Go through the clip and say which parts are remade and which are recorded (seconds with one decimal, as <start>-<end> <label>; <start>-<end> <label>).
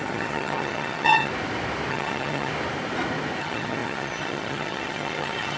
0.0-1.3 remade; 1.3-1.9 recorded; 1.9-2.5 remade; 2.5-3.4 recorded; 3.4-5.6 remade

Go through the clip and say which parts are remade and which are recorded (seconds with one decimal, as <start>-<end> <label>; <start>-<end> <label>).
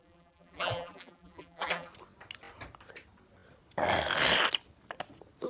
0.0-1.9 remade; 1.9-5.5 recorded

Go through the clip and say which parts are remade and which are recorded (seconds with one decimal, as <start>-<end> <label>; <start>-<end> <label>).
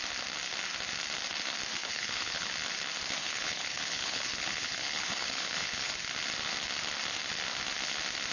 0.0-1.8 recorded; 1.8-2.5 remade; 2.5-3.2 recorded; 3.2-5.9 remade; 5.9-8.3 recorded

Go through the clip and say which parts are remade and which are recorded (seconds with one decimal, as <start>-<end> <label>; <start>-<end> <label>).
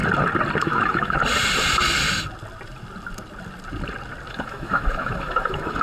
0.0-0.6 recorded; 0.6-1.2 remade; 1.2-4.3 recorded; 4.3-5.8 remade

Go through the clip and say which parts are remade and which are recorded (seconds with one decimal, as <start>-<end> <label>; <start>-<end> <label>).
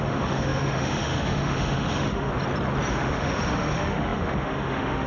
0.0-2.3 remade; 2.3-2.9 recorded; 2.9-5.1 remade